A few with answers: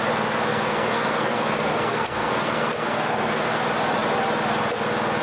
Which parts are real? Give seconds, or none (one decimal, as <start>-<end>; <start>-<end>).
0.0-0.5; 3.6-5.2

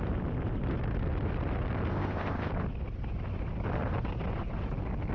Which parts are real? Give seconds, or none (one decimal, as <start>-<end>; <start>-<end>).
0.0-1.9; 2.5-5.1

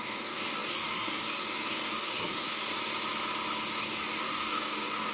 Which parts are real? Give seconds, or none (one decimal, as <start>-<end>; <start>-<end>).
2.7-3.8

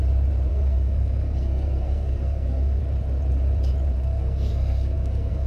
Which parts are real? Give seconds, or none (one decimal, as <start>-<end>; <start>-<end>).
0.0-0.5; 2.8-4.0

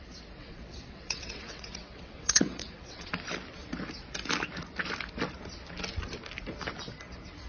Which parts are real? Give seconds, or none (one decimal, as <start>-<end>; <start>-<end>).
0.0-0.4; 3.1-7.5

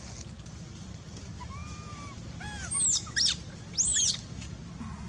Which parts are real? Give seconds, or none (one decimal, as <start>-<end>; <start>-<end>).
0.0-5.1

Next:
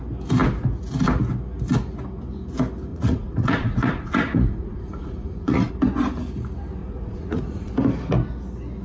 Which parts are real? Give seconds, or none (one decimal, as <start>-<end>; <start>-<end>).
0.0-2.9; 5.7-6.8; 7.7-8.8